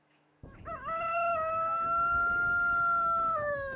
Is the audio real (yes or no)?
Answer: no